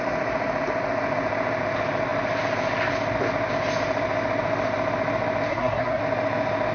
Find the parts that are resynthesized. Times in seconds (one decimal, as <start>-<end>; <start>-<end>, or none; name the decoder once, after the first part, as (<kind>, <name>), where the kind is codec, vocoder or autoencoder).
5.5-6.0 (codec, SNAC)